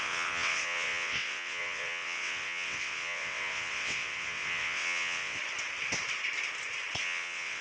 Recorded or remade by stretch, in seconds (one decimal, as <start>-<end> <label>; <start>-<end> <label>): 0.0-5.4 remade; 5.4-7.0 recorded; 7.0-7.6 remade